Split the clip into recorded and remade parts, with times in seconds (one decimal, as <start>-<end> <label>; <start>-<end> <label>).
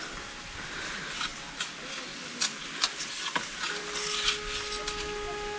0.0-5.6 recorded